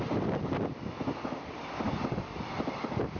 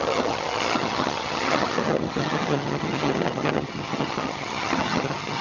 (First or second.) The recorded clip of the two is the first